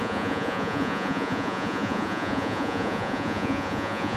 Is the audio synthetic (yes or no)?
yes